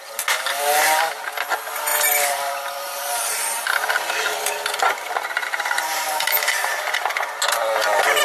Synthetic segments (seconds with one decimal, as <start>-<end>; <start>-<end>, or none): 5.4-7.1